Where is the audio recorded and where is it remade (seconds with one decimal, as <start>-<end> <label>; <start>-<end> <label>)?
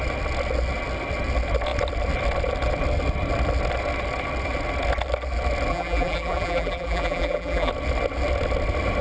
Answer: 0.0-5.7 recorded; 5.7-7.7 remade; 7.7-9.0 recorded